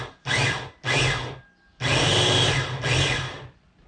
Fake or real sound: real